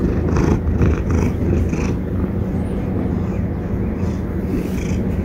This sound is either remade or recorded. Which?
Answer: recorded